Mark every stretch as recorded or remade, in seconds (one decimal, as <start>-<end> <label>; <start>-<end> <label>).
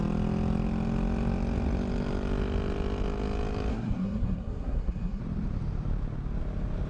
0.0-3.7 recorded; 3.7-5.2 remade; 5.2-6.9 recorded